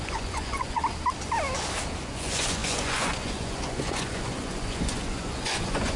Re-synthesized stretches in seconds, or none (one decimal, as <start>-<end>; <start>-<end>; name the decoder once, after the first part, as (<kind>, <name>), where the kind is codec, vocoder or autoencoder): 0.0-0.8 (vocoder, Vocos); 2.0-6.0